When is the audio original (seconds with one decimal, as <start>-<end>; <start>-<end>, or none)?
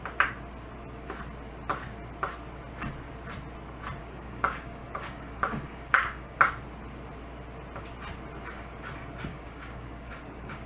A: 0.0-4.0; 6.4-9.3